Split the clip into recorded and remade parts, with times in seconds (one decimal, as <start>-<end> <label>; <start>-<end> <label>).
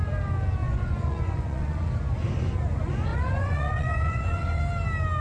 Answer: 0.0-0.6 recorded; 0.6-1.9 remade; 1.9-3.1 recorded; 3.1-4.6 remade; 4.6-5.2 recorded